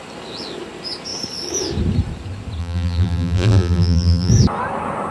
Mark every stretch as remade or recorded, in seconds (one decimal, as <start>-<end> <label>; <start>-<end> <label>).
0.0-2.6 recorded; 2.6-4.3 remade; 4.3-5.1 recorded